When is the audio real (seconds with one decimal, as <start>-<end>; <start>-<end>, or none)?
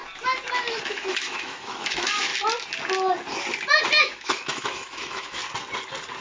0.0-0.6; 2.3-4.0; 5.4-6.2